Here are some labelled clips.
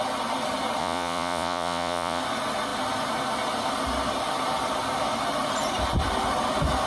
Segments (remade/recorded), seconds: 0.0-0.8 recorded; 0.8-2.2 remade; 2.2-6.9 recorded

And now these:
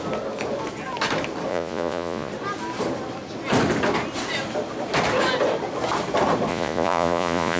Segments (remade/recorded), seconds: 0.0-1.5 recorded; 1.5-2.3 remade; 2.3-6.5 recorded; 6.5-7.6 remade

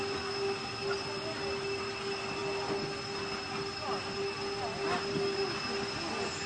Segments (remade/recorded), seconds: 0.0-6.5 recorded

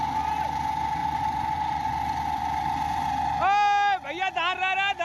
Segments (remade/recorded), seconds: 0.0-1.0 recorded; 1.0-1.9 remade; 1.9-5.0 recorded